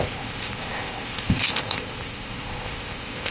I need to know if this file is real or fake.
fake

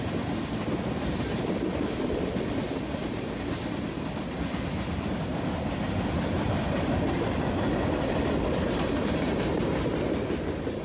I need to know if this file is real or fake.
real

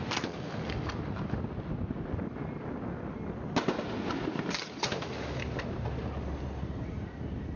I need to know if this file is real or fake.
real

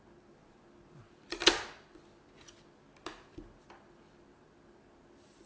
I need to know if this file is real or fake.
real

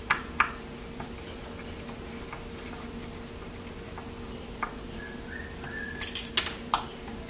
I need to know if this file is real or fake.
real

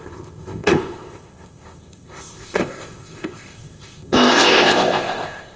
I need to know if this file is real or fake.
fake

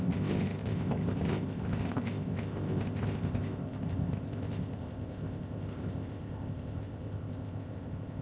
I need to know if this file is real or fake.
fake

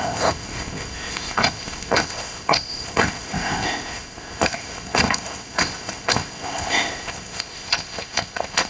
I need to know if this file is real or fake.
fake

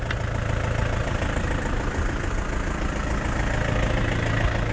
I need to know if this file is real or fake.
real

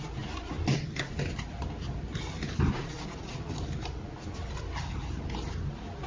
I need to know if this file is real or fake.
real